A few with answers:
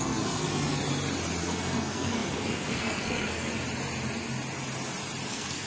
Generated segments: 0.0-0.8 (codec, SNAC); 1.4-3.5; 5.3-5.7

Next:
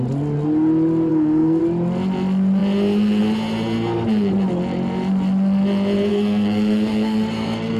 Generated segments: 1.1-1.6 (codec, SNAC); 6.1-7.8

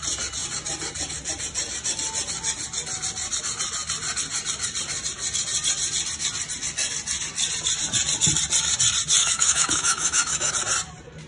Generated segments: 9.2-10.5 (autoencoder, DAC-VAE)